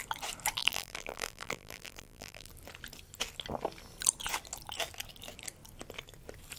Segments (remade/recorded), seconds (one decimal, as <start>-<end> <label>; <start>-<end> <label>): 0.0-0.6 recorded; 0.6-2.5 remade; 2.5-6.6 recorded